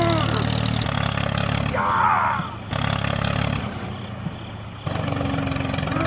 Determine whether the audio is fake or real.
real